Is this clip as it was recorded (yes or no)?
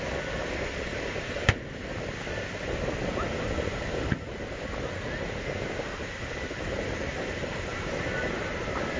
yes